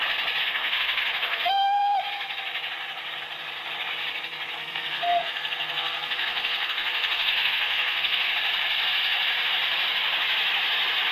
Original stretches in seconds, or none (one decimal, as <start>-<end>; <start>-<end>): 0.0-0.4; 1.8-4.6; 8.3-11.1